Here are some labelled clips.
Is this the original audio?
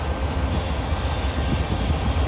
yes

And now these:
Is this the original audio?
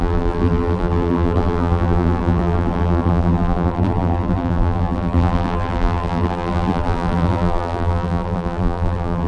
no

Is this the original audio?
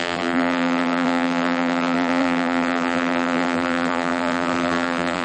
no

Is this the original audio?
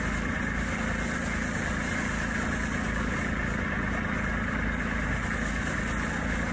yes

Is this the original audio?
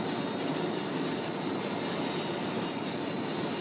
no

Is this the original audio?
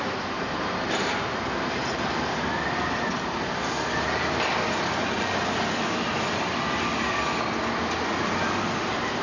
yes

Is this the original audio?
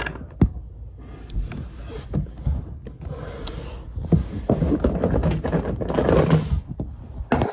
yes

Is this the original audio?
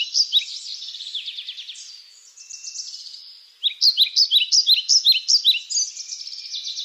yes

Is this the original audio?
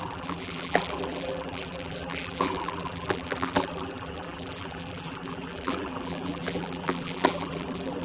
no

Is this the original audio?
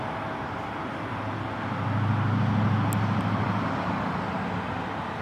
yes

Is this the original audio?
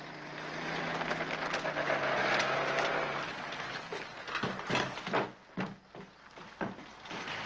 yes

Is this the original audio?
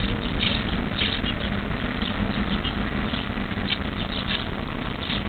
yes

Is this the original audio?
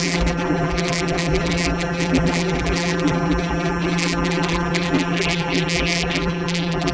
no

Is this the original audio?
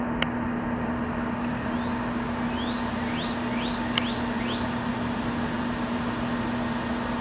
yes